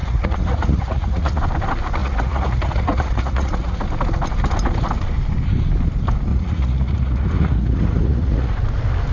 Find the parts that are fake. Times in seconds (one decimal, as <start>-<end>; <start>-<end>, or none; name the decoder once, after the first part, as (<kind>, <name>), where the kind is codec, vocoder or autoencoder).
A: 0.0-1.4 (vocoder, Vocos); 2.0-3.8; 6.3-8.5